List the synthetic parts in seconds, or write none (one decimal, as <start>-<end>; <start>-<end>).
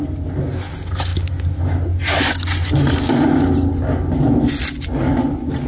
none